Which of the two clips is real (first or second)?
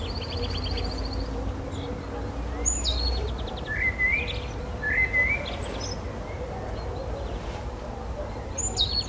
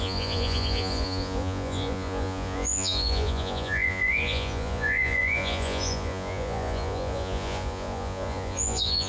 first